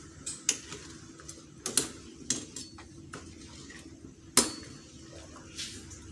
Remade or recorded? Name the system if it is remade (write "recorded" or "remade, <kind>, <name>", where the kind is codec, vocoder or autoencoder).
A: recorded